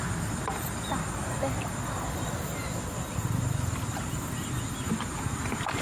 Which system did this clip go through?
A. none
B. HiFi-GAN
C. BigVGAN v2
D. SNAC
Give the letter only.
A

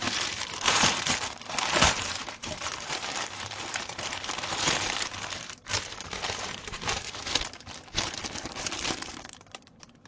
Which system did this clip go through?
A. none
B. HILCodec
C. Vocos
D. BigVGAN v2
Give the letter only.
D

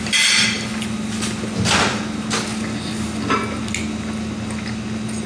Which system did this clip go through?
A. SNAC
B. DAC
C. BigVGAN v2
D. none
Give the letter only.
D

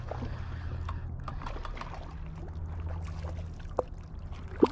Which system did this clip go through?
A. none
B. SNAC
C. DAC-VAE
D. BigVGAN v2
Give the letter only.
A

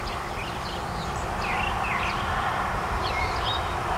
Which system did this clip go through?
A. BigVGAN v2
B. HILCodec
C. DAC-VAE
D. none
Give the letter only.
A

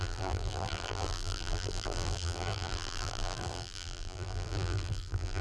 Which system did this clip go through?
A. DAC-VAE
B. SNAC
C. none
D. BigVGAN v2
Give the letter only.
D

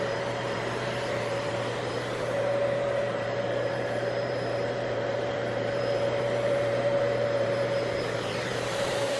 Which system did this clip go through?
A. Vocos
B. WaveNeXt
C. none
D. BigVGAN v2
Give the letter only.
D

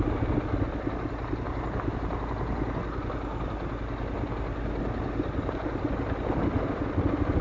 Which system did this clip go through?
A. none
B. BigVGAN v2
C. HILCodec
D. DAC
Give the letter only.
A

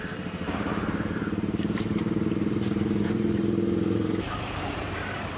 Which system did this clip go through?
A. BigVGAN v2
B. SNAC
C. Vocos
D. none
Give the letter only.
A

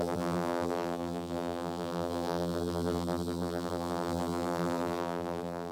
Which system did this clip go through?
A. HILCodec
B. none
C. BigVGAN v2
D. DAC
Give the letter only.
C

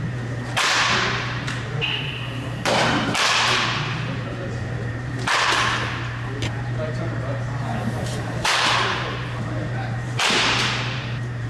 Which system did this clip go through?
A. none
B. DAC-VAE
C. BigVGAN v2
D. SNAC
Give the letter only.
C